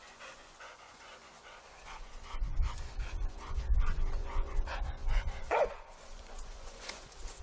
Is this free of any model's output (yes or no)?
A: no